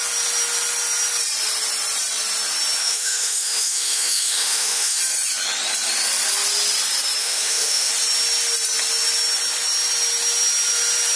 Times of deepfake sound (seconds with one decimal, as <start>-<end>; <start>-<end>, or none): 2.8-5.0; 7.2-7.9